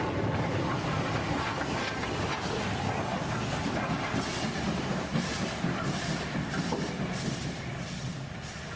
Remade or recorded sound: recorded